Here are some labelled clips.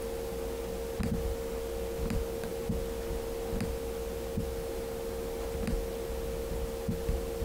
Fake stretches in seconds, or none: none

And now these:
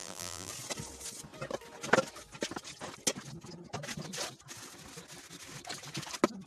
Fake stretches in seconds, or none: 0.0-0.5 (vocoder, BigVGAN v2)